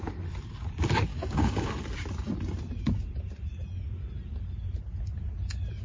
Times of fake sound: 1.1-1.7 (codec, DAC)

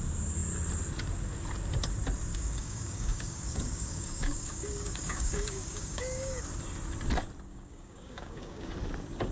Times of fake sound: 2.3-6.4 (codec, DAC); 7.5-8.7

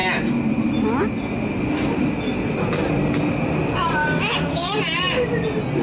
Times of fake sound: 4.0-4.8 (codec, DAC)

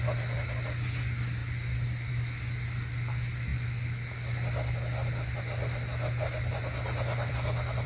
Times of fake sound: none

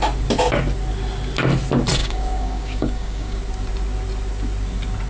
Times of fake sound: 2.0-3.4 (codec, DAC)

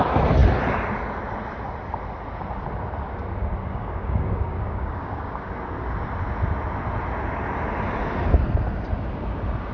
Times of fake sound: 3.6-5.5 (codec, DAC)

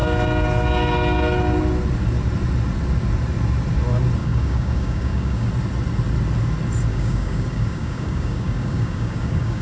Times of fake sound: 4.2-5.5 (codec, DAC); 6.9-9.6

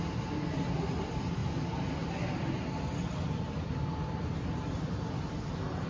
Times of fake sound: none